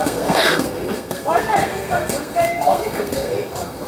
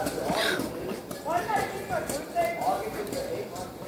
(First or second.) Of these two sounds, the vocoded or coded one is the first